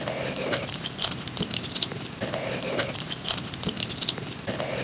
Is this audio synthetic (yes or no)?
yes